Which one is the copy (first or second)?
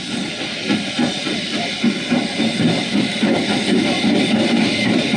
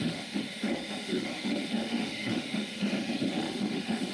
second